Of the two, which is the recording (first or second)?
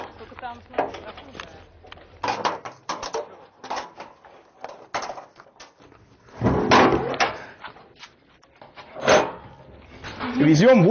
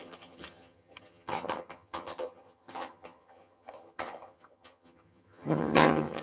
first